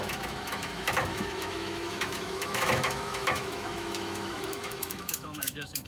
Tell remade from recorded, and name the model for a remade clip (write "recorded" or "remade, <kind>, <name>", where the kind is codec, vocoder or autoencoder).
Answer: remade, autoencoder, DAC-VAE